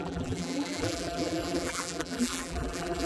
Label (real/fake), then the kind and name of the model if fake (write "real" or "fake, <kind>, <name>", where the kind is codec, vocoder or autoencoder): fake, vocoder, BigVGAN v2